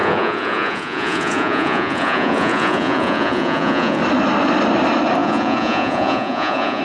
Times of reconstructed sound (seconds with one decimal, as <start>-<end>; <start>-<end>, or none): 0.0-4.0; 5.2-6.8